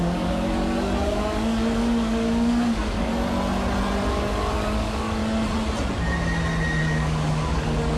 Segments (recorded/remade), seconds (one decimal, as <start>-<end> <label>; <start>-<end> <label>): 0.0-3.1 remade; 3.1-4.1 recorded; 4.1-5.2 remade; 5.2-6.8 recorded; 6.8-8.0 remade